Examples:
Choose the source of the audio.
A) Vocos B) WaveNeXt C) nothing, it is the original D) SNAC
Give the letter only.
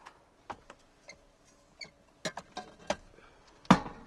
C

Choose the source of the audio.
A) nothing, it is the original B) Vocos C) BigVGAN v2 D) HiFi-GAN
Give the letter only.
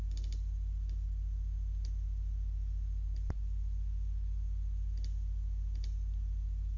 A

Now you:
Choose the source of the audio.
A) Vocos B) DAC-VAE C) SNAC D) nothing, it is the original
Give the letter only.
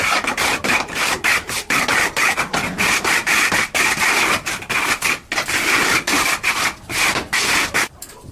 D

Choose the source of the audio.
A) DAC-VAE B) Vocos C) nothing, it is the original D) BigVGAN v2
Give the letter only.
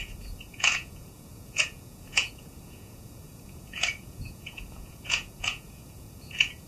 B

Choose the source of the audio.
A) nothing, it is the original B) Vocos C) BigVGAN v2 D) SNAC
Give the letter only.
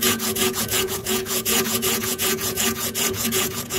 B